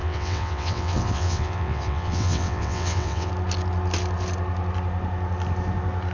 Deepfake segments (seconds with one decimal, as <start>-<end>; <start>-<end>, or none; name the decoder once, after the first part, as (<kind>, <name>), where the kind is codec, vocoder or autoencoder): 0.0-3.3 (vocoder, WaveNeXt)